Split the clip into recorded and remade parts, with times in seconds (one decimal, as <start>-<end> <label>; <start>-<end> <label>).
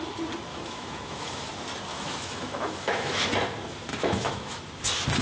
0.0-0.5 recorded; 0.5-1.5 remade; 1.5-1.9 recorded; 1.9-3.2 remade; 3.2-3.9 recorded; 3.9-4.6 remade; 4.6-5.2 recorded